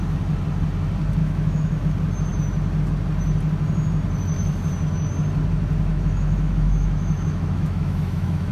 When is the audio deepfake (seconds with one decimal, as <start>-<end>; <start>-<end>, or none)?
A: 1.2-1.8; 5.9-8.5